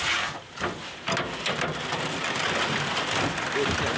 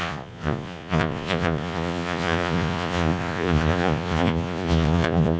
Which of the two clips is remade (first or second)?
second